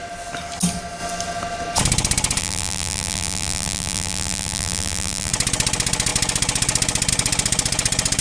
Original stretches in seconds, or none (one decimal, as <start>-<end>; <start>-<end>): 0.0-2.4; 5.3-8.2